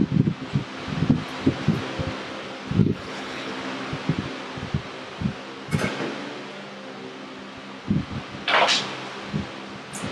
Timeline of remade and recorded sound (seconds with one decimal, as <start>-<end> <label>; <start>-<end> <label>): 0.0-2.8 recorded; 2.8-3.5 remade; 3.5-10.1 recorded